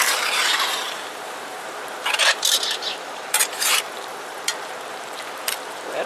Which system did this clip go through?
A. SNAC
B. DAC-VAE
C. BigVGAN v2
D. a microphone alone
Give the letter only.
C